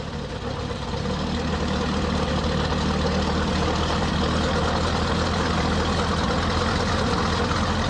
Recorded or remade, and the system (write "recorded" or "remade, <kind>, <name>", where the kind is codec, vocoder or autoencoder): recorded